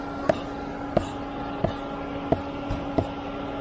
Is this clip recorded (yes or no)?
yes